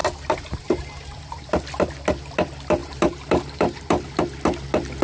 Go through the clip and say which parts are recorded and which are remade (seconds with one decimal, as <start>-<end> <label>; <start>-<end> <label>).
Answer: 0.0-1.6 remade; 1.6-2.8 recorded; 2.8-4.2 remade; 4.2-5.0 recorded